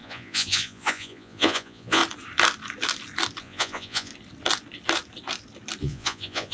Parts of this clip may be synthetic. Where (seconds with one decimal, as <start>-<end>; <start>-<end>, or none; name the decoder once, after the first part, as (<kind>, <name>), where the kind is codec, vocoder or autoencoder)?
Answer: 0.0-2.0 (vocoder, Vocos); 3.4-4.1; 5.8-6.5